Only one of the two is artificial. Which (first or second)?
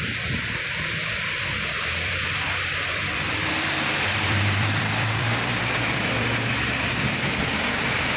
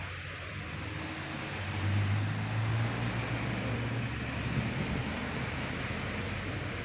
first